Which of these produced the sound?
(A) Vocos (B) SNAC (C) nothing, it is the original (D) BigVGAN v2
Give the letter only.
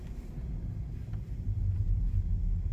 C